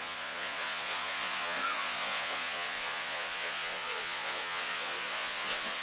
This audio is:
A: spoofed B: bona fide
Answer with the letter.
A